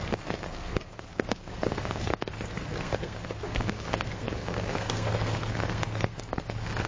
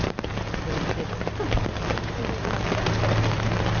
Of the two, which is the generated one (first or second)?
first